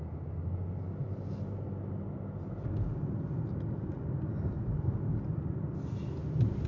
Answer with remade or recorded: recorded